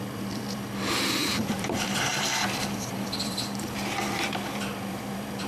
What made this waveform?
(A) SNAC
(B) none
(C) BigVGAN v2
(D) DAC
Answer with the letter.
C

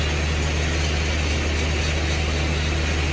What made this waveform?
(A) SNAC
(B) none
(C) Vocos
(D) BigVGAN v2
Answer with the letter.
B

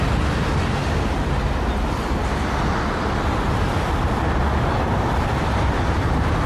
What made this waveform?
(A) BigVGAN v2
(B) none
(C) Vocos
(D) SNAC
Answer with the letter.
B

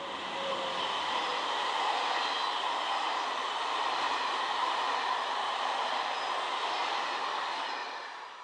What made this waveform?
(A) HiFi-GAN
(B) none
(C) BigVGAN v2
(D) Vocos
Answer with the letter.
B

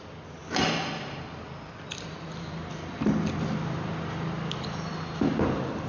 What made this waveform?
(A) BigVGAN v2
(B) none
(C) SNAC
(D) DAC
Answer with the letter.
B